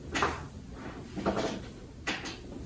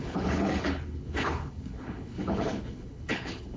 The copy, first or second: second